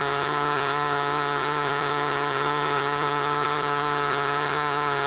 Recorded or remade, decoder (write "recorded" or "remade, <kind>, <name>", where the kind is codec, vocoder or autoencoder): remade, vocoder, HiFi-GAN